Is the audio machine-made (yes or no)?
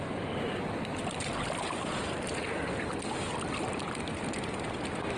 no